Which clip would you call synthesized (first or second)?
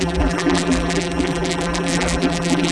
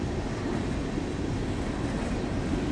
first